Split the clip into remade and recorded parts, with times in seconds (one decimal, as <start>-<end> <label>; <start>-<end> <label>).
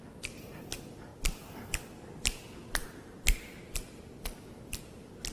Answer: 0.0-1.1 recorded; 1.1-1.6 remade; 1.6-2.8 recorded; 2.8-3.4 remade; 3.4-5.3 recorded